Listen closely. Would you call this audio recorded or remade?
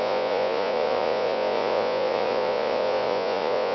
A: remade